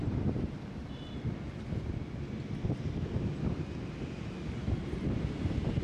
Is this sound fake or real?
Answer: real